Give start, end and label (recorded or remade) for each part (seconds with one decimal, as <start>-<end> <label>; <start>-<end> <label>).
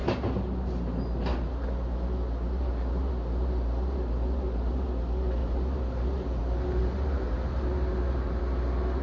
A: 0.0-5.4 recorded; 5.4-8.4 remade; 8.4-9.0 recorded